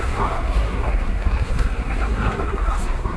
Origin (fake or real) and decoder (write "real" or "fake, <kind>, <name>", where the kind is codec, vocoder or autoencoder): fake, codec, SNAC